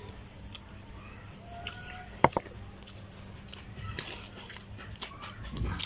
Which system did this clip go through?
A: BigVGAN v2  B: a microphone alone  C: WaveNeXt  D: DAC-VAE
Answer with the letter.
A